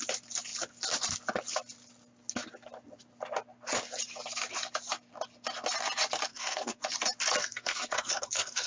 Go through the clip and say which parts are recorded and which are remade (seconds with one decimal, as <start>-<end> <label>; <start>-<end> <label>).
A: 0.0-6.3 recorded; 6.3-6.8 remade; 6.8-7.4 recorded; 7.4-8.7 remade